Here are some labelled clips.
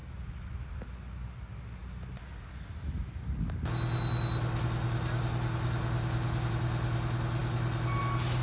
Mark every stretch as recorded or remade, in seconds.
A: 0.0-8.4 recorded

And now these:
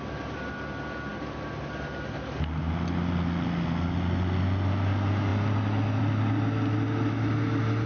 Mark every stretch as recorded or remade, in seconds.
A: 0.0-7.9 recorded

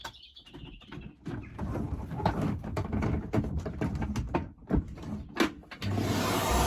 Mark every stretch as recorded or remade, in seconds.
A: 0.0-6.7 recorded